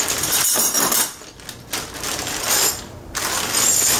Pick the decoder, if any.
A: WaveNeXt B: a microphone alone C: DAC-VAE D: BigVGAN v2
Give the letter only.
B